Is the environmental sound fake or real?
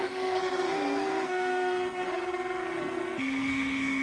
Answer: fake